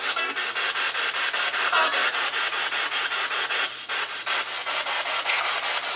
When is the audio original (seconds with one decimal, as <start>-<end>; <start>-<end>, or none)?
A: 0.0-2.0; 4.1-4.6; 5.4-6.0

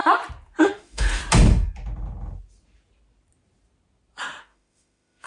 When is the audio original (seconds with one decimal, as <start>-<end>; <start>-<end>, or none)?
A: 0.0-0.6; 1.2-4.4